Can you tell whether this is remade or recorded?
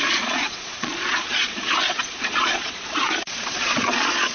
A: remade